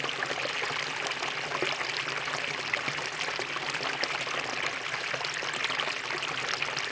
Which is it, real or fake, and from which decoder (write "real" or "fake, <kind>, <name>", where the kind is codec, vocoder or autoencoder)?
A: real